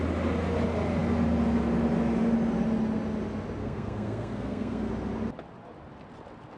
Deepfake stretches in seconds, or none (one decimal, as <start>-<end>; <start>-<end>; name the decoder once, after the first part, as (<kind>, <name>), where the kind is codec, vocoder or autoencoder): 3.6-4.9 (codec, SNAC)